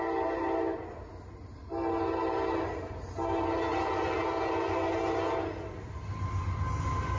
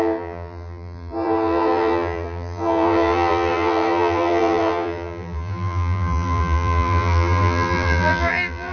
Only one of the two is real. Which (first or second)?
first